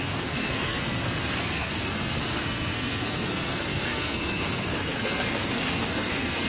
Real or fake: fake